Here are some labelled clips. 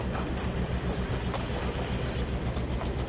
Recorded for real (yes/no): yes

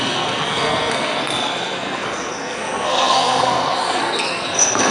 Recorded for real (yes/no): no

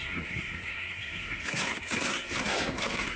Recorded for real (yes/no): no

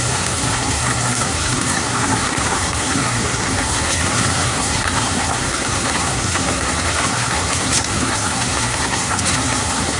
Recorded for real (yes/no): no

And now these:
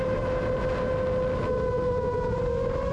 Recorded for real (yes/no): yes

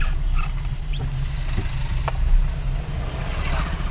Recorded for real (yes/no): yes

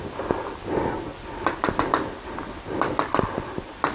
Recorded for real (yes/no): yes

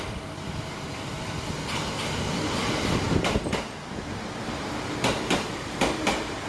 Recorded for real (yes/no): yes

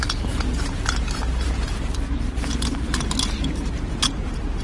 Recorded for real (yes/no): yes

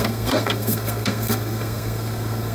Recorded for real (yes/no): no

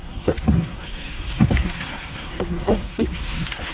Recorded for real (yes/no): no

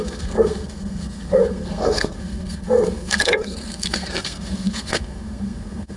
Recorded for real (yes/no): no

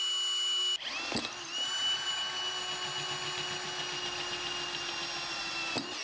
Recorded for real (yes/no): yes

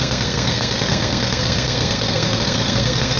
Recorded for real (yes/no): no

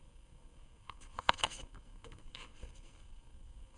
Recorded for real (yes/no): no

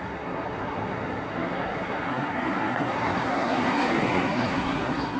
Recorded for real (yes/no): no